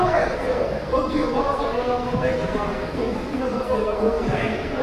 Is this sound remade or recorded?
remade